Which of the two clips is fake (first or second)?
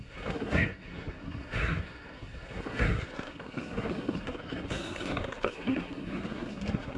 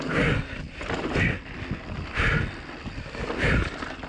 first